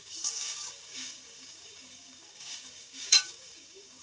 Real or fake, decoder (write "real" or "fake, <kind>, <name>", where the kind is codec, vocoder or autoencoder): fake, codec, DAC